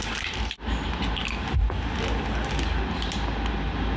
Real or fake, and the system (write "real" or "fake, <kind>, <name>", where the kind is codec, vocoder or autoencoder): real